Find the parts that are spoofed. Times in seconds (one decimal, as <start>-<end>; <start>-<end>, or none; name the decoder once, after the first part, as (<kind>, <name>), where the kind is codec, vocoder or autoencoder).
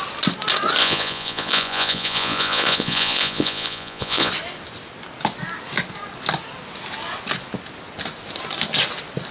0.8-4.3 (vocoder, Vocos)